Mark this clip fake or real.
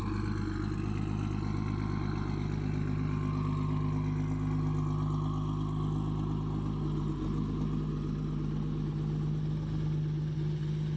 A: real